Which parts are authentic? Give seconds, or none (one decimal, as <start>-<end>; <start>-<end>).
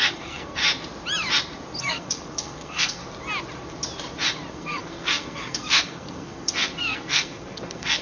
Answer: 0.6-1.8; 3.0-4.5